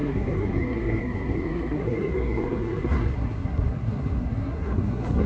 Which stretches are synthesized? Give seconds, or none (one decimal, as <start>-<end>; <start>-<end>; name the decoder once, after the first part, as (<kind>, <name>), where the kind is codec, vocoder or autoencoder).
0.0-5.3 (codec, SNAC)